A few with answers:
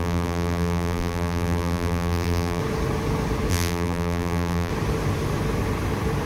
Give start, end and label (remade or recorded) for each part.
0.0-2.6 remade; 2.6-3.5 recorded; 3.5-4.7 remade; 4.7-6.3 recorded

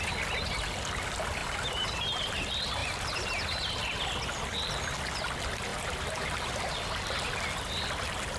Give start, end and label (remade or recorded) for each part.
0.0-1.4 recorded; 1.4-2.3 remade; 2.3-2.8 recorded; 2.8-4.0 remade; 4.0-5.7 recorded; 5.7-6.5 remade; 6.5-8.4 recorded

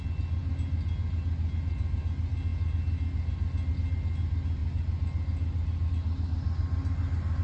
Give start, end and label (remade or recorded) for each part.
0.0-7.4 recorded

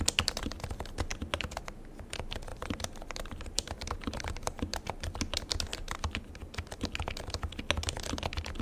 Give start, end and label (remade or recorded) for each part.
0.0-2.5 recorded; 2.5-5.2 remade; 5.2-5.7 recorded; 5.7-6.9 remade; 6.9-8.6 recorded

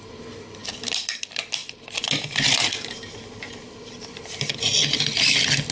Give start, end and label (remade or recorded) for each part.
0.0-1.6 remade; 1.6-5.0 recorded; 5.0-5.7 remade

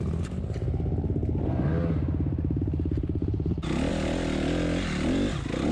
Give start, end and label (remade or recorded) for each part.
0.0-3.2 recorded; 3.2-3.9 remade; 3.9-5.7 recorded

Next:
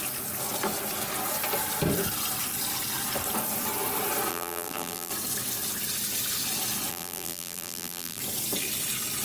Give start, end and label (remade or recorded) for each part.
0.0-4.3 recorded; 4.3-5.1 remade; 5.1-6.9 recorded; 6.9-8.2 remade; 8.2-9.2 recorded